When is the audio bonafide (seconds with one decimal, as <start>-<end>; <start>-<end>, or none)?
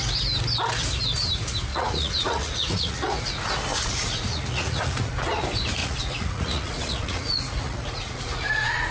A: 0.0-1.7; 3.2-3.7; 5.1-5.8